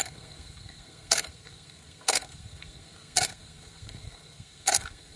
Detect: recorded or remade remade